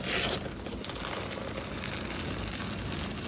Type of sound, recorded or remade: recorded